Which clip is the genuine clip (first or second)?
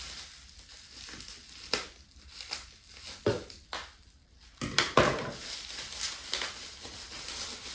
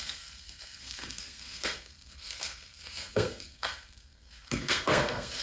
first